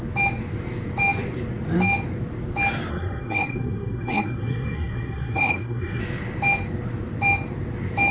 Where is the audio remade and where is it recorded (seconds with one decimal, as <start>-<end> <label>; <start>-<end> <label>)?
0.0-2.9 recorded; 2.9-6.0 remade; 6.0-8.1 recorded

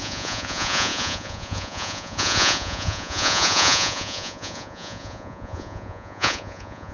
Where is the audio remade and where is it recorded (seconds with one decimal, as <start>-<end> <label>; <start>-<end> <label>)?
0.0-6.9 remade